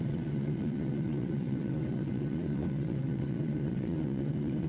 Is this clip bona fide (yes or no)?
no